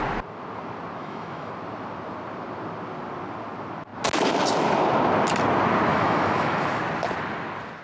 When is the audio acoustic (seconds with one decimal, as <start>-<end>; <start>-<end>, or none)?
0.0-1.0; 1.5-5.9; 6.8-7.8